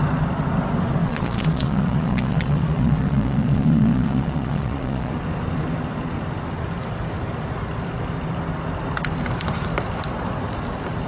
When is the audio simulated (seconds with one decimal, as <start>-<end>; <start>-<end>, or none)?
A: 1.0-5.1